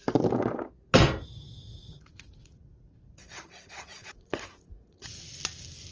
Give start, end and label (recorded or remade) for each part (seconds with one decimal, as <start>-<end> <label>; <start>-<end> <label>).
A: 0.0-1.7 recorded; 1.7-5.2 remade; 5.2-5.9 recorded